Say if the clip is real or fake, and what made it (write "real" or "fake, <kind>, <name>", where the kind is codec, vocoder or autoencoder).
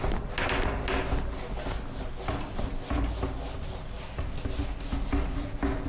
real